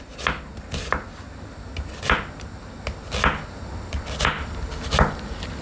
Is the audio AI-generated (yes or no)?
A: no